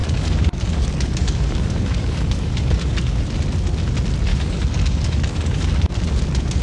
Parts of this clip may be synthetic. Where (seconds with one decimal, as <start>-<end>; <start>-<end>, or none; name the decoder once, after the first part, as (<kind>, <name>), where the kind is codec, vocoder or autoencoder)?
0.0-3.2 (codec, DAC); 4.3-5.9